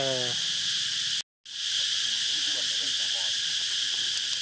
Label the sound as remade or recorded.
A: recorded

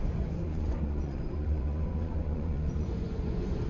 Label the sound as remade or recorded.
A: remade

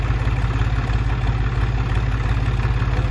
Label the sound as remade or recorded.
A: recorded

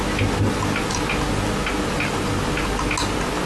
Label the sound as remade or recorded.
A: recorded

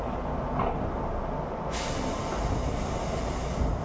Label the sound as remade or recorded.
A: recorded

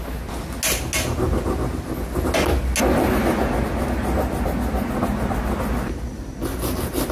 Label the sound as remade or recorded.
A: recorded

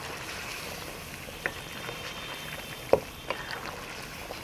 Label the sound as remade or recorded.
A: recorded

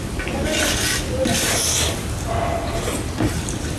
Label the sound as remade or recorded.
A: recorded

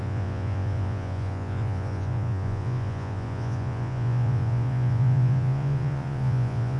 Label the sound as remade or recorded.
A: remade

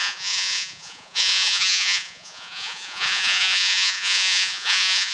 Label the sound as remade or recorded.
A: remade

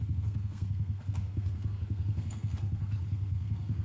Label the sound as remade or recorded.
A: remade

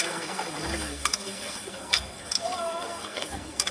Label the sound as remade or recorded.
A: remade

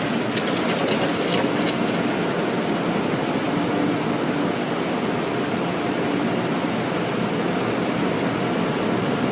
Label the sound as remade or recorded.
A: recorded